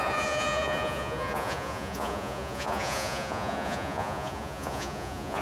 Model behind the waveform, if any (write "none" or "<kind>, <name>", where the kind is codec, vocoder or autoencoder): vocoder, Vocos